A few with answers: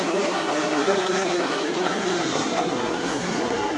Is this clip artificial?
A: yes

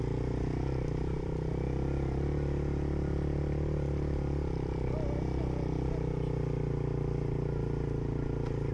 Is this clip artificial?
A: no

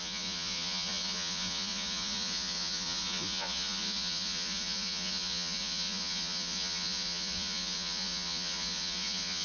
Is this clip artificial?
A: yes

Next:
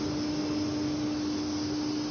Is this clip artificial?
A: no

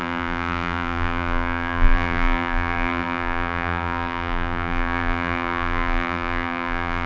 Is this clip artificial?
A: yes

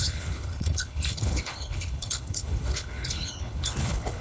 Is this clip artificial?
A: yes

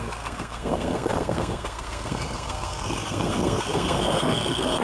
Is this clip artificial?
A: yes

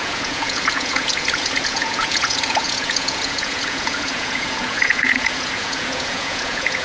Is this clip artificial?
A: yes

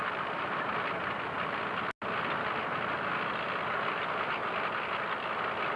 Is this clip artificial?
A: no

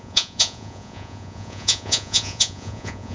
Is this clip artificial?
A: yes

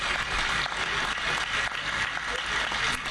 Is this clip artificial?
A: no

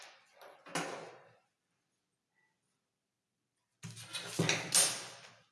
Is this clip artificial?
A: no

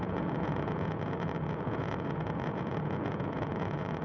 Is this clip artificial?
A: yes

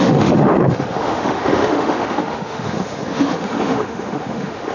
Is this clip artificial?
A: yes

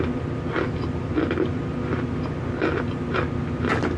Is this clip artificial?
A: no